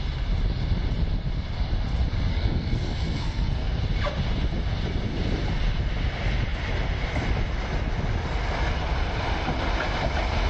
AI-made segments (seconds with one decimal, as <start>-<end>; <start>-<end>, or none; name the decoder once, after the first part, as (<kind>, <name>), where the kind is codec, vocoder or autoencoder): 2.3-3.8 (codec, SNAC)